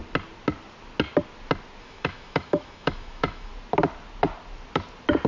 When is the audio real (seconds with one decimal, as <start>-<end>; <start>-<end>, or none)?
0.0-1.8; 3.5-5.3